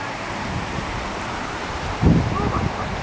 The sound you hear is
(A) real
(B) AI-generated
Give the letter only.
B